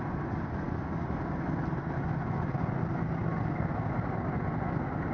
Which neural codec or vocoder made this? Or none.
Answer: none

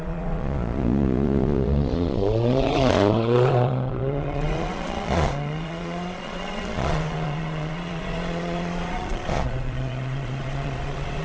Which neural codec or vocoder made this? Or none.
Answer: vocoder, Vocos